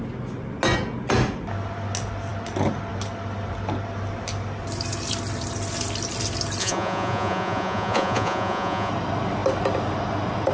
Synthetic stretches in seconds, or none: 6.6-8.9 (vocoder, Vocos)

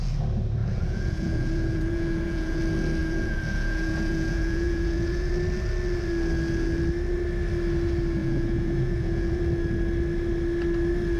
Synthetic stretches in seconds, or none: 0.6-2.6 (vocoder, Vocos); 3.0-5.3; 8.2-9.4

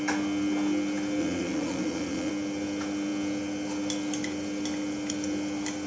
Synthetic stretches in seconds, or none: 1.2-2.3 (vocoder, Vocos)

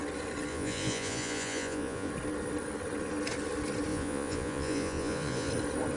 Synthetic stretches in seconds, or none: 0.5-2.1 (vocoder, Vocos); 3.9-5.5

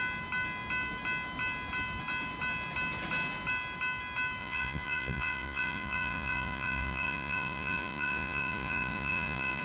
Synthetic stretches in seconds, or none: 4.4-9.6 (vocoder, Vocos)

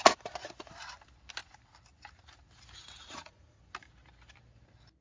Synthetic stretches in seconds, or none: 3.0-3.6 (vocoder, Vocos)

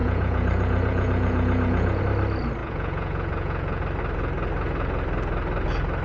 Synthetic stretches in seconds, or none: 0.0-2.0 (vocoder, Vocos); 2.6-3.8